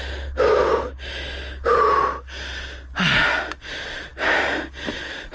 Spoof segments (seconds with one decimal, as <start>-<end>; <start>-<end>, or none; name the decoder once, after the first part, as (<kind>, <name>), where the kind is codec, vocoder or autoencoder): none